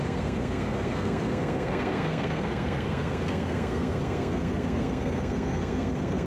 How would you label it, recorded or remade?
remade